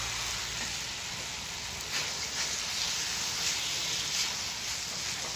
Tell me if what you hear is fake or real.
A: real